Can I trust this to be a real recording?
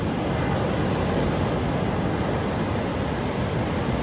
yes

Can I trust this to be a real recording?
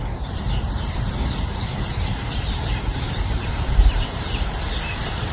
no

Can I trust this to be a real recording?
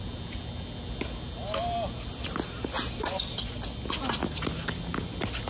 yes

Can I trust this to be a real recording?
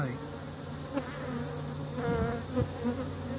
yes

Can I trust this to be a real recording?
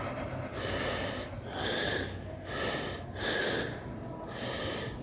yes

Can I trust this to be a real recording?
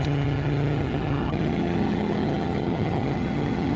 no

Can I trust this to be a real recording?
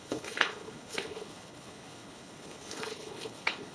no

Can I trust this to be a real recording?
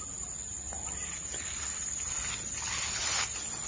yes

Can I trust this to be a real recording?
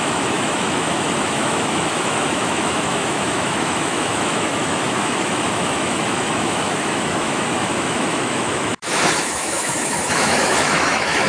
no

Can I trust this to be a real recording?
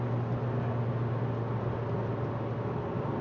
yes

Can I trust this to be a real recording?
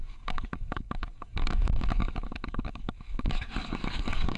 no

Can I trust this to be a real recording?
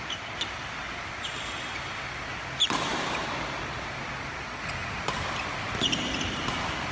yes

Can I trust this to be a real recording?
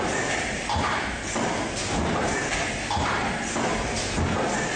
yes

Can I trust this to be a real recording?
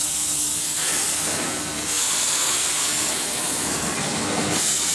no